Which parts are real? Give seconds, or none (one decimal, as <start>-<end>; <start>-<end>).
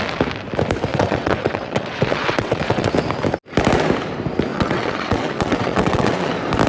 0.0-0.9; 2.9-4.5; 6.3-6.7